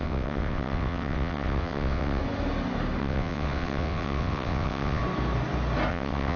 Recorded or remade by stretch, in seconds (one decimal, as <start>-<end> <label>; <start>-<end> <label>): 0.0-2.2 remade; 2.2-3.0 recorded; 3.0-5.0 remade; 5.0-5.9 recorded; 5.9-6.4 remade